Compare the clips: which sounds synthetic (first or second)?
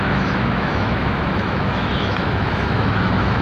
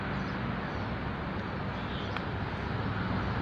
first